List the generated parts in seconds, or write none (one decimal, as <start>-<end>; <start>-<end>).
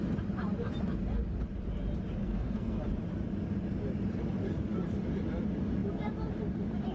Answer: 2.2-2.8